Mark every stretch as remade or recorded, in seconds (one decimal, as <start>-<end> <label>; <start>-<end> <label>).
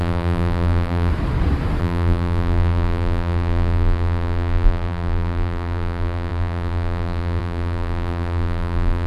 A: 0.0-1.1 remade; 1.1-1.8 recorded; 1.8-9.1 remade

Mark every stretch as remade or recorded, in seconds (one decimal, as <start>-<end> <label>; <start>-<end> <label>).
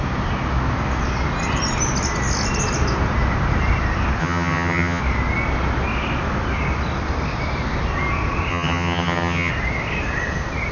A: 0.0-4.2 recorded; 4.2-5.0 remade; 5.0-8.5 recorded; 8.5-9.5 remade; 9.5-10.7 recorded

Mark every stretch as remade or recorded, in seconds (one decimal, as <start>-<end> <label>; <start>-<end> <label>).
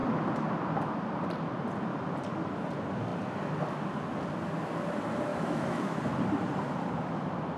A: 0.0-5.3 recorded; 5.3-6.0 remade; 6.0-7.6 recorded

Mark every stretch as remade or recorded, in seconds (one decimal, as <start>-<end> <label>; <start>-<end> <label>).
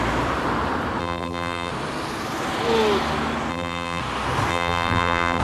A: 0.0-1.0 recorded; 1.0-1.7 remade; 1.7-3.5 recorded; 3.5-4.0 remade; 4.0-4.5 recorded; 4.5-5.4 remade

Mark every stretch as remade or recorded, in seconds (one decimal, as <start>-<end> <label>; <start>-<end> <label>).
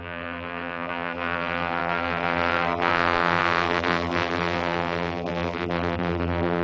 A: 0.0-6.6 remade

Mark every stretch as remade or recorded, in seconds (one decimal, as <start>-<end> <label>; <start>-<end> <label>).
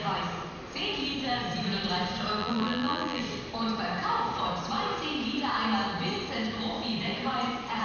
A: 0.0-2.4 recorded; 2.4-3.2 remade; 3.2-7.8 recorded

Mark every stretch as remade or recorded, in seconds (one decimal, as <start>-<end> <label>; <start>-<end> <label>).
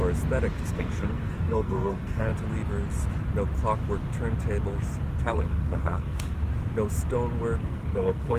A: 0.0-0.5 recorded; 0.5-2.3 remade; 2.3-5.1 recorded; 5.1-6.4 remade; 6.4-7.6 recorded; 7.6-8.4 remade